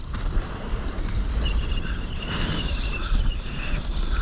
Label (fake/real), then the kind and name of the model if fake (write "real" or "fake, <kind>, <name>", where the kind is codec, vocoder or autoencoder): fake, vocoder, BigVGAN v2